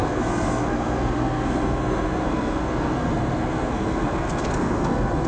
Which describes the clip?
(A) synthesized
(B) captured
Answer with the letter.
A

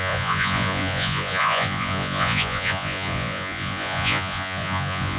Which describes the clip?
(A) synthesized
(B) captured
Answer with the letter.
A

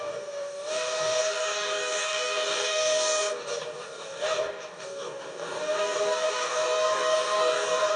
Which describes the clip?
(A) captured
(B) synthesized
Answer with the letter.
B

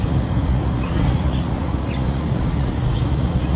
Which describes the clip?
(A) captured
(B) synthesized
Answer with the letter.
B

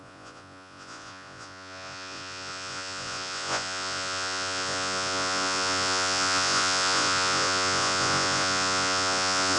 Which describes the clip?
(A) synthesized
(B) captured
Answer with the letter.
A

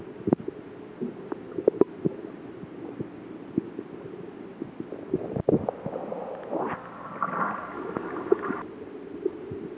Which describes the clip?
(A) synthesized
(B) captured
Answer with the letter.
B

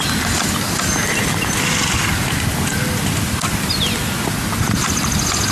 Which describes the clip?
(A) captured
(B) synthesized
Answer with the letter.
A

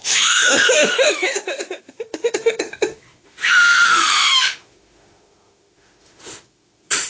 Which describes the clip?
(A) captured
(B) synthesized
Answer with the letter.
B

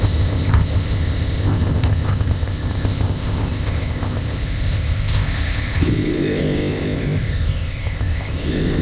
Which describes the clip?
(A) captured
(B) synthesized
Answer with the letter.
B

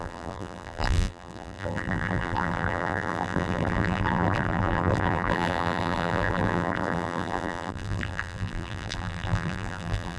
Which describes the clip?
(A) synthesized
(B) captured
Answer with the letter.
A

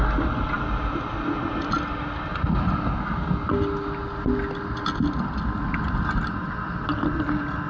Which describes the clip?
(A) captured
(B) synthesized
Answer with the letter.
A